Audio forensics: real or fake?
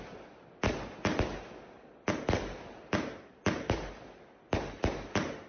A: real